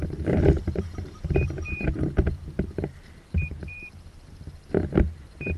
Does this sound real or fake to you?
fake